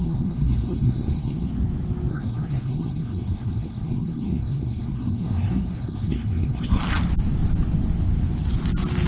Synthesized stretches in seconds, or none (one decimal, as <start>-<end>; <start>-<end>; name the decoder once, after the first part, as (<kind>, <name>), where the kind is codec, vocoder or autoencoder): 0.0-1.5 (codec, SNAC); 2.1-6.8